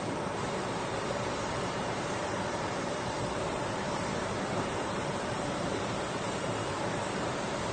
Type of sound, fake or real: fake